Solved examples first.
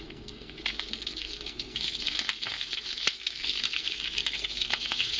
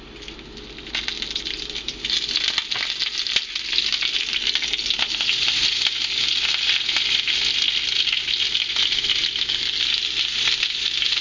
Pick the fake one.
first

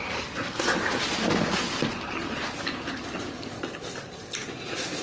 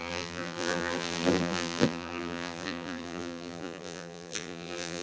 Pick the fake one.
second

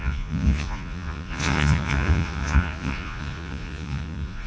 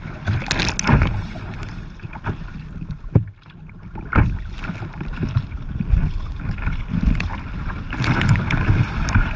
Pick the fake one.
first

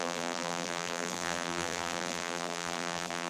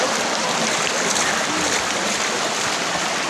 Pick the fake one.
first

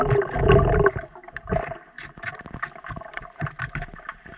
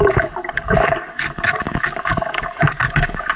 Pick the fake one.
second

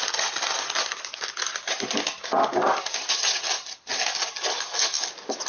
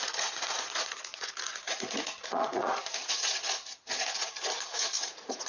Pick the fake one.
second